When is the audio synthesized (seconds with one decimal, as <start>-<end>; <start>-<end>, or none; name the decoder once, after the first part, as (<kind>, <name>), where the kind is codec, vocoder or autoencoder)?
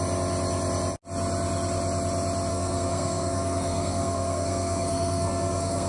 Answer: 2.5-5.9 (codec, SNAC)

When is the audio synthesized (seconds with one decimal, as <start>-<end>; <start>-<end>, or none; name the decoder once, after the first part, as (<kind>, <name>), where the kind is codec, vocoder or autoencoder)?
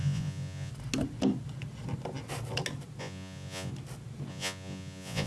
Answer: 0.0-0.7 (vocoder, Vocos); 3.0-3.7; 4.3-5.3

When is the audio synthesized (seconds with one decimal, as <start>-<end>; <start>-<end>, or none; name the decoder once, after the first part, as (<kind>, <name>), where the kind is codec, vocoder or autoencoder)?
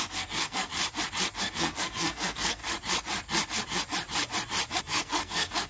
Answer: 0.0-0.7 (codec, SNAC); 1.4-2.6; 4.8-5.7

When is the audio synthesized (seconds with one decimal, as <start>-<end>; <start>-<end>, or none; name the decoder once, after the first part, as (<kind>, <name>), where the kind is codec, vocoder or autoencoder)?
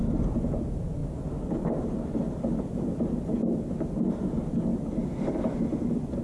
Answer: none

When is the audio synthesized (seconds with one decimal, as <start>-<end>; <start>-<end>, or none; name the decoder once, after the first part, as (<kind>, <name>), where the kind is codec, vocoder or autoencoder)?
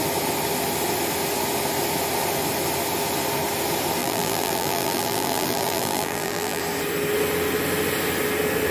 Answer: 4.0-6.6 (vocoder, BigVGAN v2)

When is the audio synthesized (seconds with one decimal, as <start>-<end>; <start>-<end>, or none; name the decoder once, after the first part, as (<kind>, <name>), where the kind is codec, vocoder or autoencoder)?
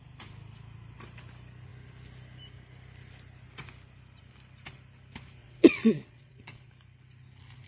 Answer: 5.4-6.7 (vocoder, Vocos)